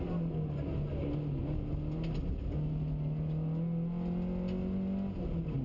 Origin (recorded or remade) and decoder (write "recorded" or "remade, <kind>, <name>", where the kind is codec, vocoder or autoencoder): recorded